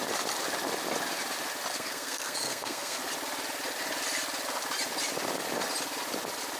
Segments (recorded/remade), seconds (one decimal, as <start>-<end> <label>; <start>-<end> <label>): 0.0-1.7 recorded; 1.7-3.0 remade; 3.0-6.6 recorded